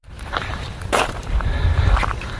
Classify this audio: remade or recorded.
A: remade